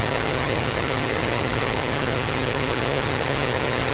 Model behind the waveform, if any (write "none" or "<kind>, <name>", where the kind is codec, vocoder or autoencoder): vocoder, HiFi-GAN